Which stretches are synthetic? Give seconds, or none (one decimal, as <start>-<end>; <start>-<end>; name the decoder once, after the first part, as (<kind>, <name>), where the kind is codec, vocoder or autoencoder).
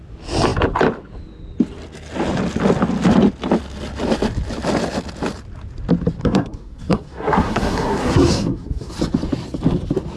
6.2-8.9 (codec, SNAC)